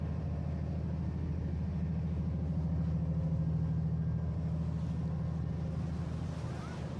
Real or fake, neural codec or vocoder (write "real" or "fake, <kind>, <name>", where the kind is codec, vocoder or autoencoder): real